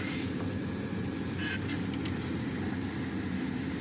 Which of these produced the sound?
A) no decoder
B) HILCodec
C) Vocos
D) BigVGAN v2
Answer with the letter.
A